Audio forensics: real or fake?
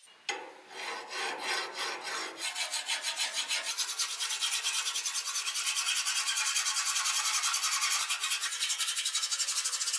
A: real